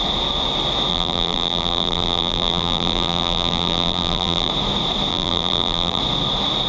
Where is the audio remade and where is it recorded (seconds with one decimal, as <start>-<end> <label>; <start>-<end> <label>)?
0.0-0.9 recorded; 0.9-4.5 remade; 4.5-5.1 recorded; 5.1-6.0 remade; 6.0-6.7 recorded